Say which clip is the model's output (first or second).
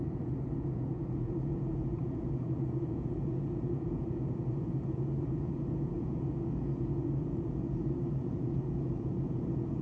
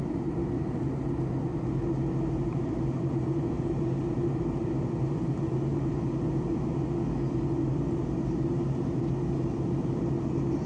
first